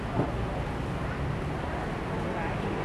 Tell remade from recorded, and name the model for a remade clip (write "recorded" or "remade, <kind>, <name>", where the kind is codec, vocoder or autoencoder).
recorded